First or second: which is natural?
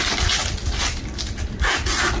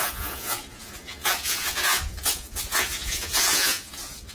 first